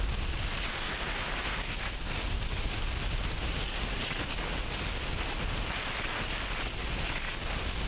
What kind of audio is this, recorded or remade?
recorded